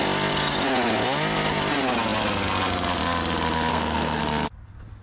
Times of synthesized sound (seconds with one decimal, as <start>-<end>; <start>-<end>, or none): 3.7-4.2